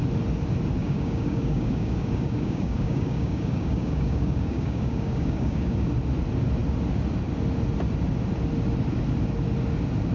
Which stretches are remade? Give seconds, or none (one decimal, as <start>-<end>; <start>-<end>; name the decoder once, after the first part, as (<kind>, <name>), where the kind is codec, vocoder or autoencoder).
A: 0.8-5.9 (codec, DAC)